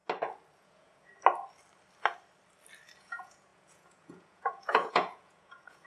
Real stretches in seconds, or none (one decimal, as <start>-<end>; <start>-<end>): 0.0-0.6; 1.1-3.0